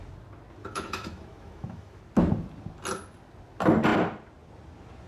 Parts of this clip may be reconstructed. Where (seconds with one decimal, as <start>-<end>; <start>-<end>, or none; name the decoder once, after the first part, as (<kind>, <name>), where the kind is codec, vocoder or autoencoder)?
0.6-2.0 (autoencoder, DAC-VAE)